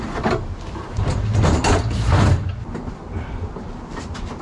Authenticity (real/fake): real